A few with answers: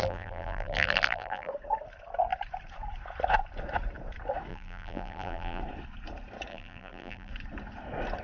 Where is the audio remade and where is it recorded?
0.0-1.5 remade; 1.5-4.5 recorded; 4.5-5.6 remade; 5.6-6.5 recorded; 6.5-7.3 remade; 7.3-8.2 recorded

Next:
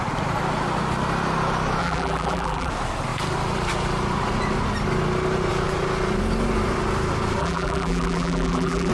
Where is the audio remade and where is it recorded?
0.0-1.8 recorded; 1.8-2.7 remade; 2.7-7.4 recorded; 7.4-8.9 remade

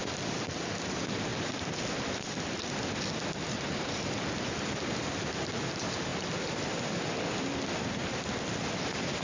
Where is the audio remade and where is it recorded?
0.0-1.3 recorded; 1.3-4.1 remade; 4.1-6.1 recorded; 6.1-6.9 remade; 6.9-9.2 recorded

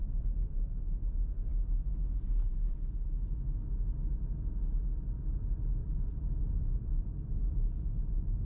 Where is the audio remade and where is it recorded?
0.0-5.8 recorded; 5.8-7.6 remade; 7.6-8.4 recorded